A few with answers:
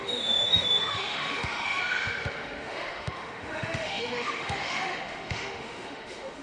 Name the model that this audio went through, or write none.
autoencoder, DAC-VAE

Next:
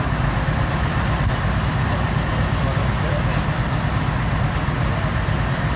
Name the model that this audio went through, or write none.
none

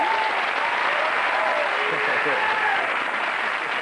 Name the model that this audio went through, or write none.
none